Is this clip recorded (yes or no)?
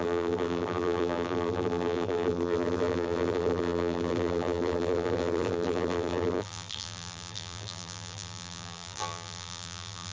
no